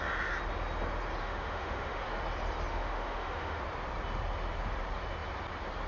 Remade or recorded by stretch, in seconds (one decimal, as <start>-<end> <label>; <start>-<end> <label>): 0.0-1.2 recorded; 1.2-2.0 remade; 2.0-2.7 recorded; 2.7-3.6 remade; 3.6-5.9 recorded